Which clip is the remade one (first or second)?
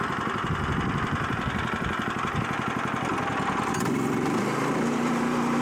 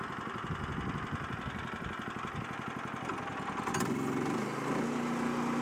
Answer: first